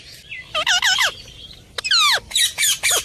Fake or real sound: real